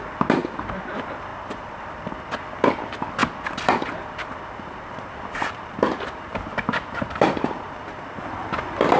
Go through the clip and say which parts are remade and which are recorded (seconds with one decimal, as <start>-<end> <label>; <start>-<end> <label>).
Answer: 0.0-0.4 recorded; 0.4-0.9 remade; 0.9-1.3 recorded; 1.3-2.7 remade; 2.7-3.2 recorded; 3.2-8.2 remade; 8.2-9.0 recorded